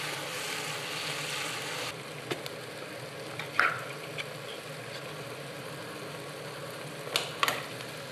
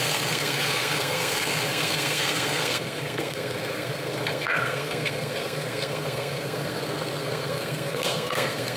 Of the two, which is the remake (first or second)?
second